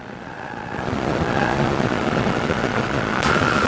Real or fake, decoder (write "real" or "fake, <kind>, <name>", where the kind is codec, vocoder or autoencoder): fake, vocoder, Vocos